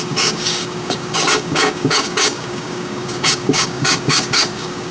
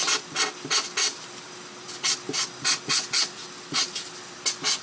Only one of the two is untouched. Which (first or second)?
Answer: second